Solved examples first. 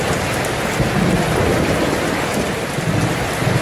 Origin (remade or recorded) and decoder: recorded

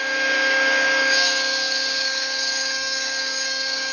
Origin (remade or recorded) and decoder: remade, codec, DAC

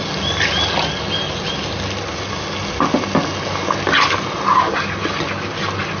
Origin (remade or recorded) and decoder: recorded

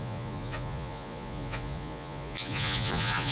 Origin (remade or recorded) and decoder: remade, vocoder, Vocos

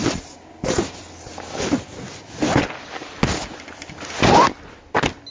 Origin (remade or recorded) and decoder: recorded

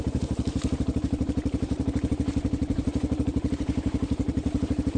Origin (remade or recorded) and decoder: remade, vocoder, BigVGAN v2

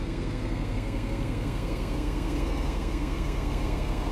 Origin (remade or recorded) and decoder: remade, codec, SNAC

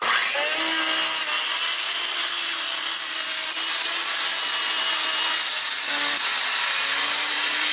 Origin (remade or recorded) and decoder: recorded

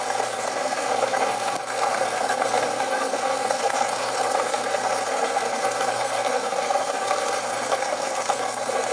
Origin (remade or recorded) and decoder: remade, codec, SNAC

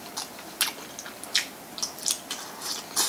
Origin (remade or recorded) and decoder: recorded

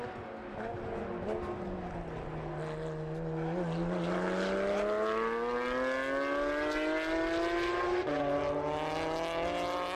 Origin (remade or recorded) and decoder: recorded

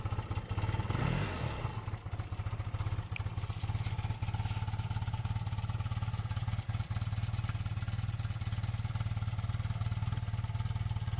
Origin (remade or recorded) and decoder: recorded